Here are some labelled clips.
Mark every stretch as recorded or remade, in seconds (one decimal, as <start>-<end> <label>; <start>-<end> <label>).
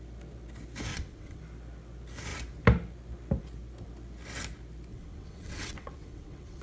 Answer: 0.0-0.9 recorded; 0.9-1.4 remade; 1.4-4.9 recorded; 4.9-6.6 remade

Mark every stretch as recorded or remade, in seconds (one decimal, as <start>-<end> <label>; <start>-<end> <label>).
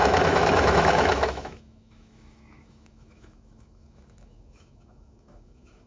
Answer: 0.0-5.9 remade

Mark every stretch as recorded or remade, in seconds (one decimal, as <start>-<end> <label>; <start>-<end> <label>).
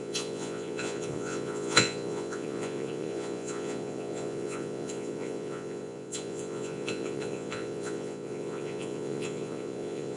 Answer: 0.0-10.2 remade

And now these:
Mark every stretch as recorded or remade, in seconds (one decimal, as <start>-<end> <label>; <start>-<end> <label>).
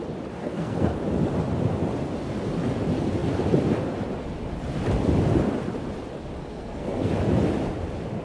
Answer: 0.0-0.4 recorded; 0.4-1.0 remade; 1.0-6.4 recorded; 6.4-7.1 remade; 7.1-8.2 recorded